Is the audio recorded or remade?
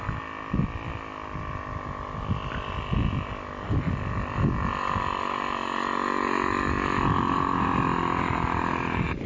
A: recorded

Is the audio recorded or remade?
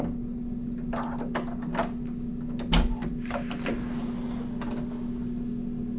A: recorded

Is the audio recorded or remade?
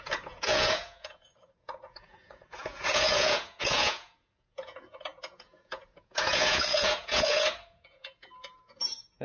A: remade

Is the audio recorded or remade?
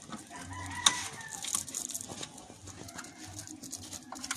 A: recorded